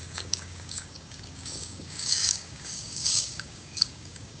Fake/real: fake